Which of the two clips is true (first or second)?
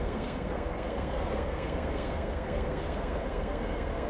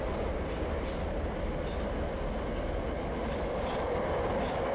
second